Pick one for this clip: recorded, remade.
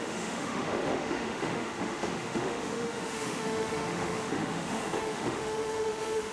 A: remade